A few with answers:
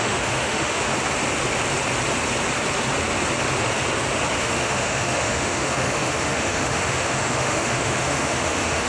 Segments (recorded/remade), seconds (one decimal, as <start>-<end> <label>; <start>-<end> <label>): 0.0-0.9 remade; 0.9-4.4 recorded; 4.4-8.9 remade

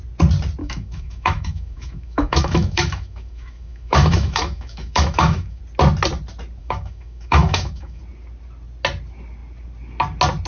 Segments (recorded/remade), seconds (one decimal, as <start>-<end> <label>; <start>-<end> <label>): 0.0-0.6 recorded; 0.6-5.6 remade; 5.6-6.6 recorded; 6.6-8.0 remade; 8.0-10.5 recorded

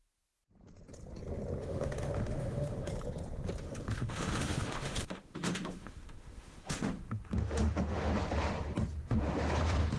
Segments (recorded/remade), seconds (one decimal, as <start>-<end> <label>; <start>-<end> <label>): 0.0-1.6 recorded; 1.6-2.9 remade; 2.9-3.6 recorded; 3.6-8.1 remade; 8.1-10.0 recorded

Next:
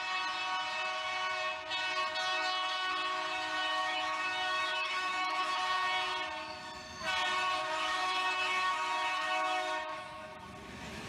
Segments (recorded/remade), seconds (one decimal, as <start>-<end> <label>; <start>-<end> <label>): 0.0-2.3 recorded; 2.3-2.9 remade; 2.9-3.6 recorded; 3.6-5.6 remade; 5.6-7.6 recorded; 7.6-10.4 remade; 10.4-11.1 recorded

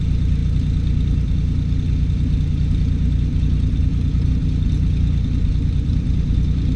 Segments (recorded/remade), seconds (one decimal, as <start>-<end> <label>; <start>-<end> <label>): 0.0-6.8 recorded

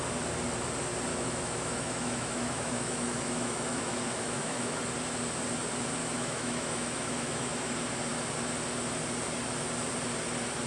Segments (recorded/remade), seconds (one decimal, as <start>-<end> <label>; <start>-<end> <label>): 0.0-1.1 recorded; 1.1-4.8 remade; 4.8-6.0 recorded; 6.0-7.7 remade; 7.7-10.7 recorded